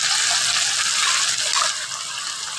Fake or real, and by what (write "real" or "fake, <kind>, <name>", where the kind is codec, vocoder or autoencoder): real